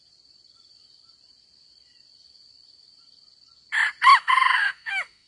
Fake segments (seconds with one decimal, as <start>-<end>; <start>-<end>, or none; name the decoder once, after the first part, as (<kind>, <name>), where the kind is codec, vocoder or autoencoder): 4.1-5.3 (autoencoder, DAC-VAE)

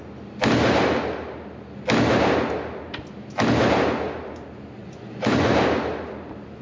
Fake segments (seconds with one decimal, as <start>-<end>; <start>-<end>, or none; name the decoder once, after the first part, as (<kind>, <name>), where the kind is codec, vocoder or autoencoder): 4.8-5.5 (vocoder, Vocos)

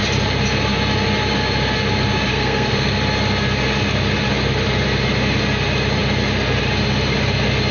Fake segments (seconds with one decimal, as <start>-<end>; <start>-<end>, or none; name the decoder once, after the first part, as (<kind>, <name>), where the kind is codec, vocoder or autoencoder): 2.3-2.9 (codec, SNAC)

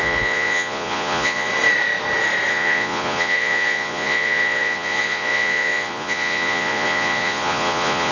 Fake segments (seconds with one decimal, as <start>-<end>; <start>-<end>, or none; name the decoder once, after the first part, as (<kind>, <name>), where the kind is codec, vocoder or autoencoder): 0.0-1.5 (vocoder, Vocos); 2.5-8.1

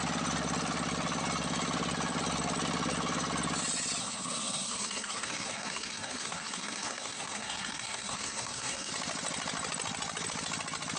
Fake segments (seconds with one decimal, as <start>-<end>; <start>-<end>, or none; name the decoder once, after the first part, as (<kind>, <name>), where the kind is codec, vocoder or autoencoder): 4.0-8.9 (codec, SNAC)